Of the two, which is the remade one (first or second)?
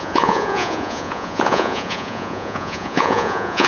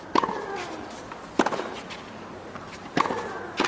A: first